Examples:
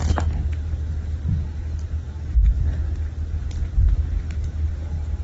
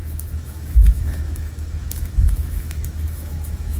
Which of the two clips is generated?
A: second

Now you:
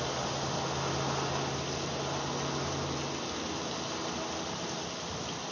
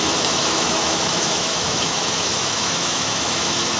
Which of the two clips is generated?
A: second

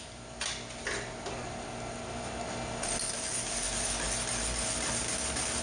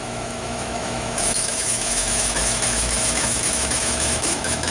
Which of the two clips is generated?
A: second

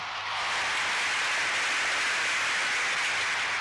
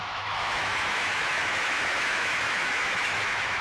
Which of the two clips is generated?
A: second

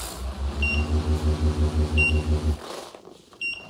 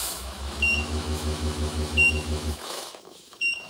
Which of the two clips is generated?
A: second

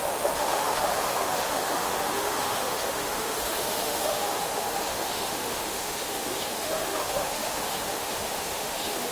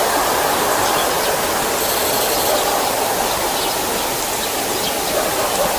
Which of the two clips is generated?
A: first